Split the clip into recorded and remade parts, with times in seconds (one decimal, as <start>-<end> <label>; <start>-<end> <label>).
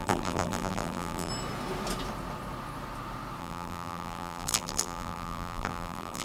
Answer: 0.0-1.3 remade; 1.3-3.4 recorded; 3.4-6.2 remade